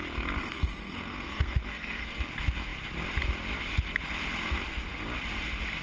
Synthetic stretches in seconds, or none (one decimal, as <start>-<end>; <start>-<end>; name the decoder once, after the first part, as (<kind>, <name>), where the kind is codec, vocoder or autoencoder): 0.4-2.3 (codec, SNAC)